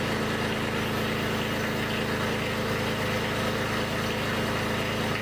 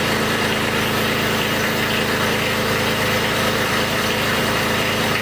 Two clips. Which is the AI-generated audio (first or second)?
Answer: second